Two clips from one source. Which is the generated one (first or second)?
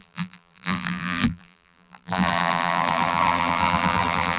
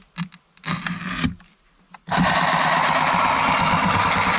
first